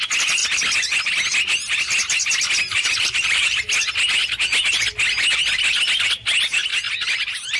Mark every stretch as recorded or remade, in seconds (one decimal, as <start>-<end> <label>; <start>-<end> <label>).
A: 0.0-2.7 recorded; 2.7-3.6 remade; 3.6-7.6 recorded